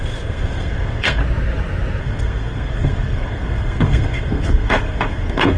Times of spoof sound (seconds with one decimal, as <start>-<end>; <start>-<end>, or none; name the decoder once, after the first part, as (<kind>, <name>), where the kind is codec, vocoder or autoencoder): 0.0-1.2 (codec, SNAC); 2.0-5.6

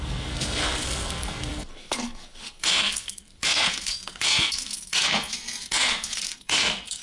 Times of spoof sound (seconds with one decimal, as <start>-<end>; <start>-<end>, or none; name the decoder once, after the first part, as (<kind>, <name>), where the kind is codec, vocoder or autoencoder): 0.0-7.0 (codec, SNAC)

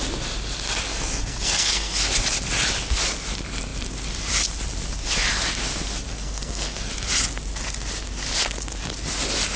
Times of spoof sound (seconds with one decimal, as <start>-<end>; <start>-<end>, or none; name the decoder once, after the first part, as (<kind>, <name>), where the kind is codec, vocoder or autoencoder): 0.9-2.1 (codec, SNAC); 6.1-6.9

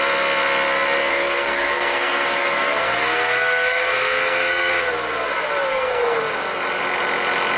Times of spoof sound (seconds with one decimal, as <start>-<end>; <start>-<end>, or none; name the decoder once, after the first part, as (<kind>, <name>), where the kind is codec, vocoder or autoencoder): 1.1-4.7 (codec, SNAC); 5.7-6.2

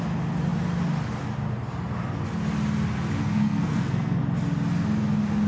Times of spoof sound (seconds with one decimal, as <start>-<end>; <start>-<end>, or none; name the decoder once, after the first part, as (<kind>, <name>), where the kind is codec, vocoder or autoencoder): 3.2-4.2 (codec, SNAC)